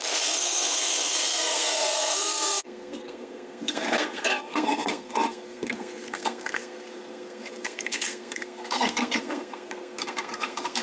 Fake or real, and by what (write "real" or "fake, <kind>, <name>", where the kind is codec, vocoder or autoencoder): fake, codec, SNAC